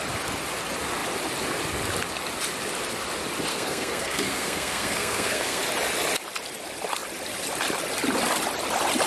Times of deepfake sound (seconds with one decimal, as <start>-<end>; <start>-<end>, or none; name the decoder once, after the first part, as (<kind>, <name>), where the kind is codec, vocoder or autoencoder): 3.5-5.6 (codec, SNAC)